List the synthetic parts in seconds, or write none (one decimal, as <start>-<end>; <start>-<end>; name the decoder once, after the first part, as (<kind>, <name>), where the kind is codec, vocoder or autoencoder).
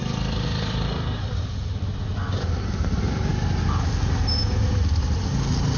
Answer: none